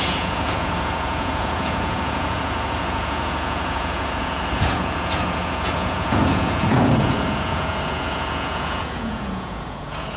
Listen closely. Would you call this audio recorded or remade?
remade